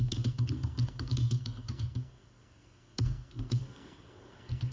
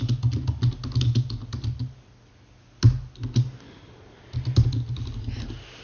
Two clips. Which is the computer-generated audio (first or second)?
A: first